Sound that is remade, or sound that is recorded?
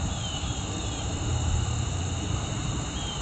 remade